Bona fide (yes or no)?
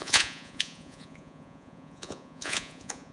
no